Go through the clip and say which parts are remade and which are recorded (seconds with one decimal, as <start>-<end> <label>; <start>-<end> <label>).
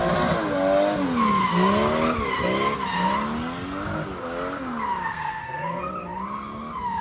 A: 0.0-5.1 recorded; 5.1-5.9 remade; 5.9-7.0 recorded